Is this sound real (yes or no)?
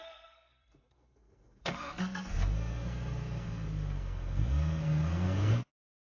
no